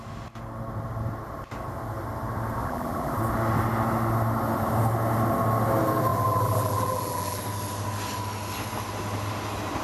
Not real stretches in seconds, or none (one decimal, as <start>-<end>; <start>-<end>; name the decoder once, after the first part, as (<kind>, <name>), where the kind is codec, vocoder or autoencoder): 2.6-3.2 (vocoder, BigVGAN v2); 6.1-7.4